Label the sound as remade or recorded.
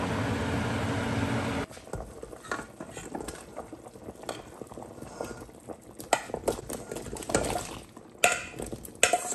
recorded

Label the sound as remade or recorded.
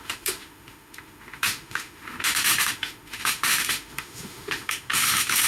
remade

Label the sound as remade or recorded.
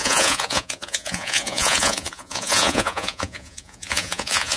remade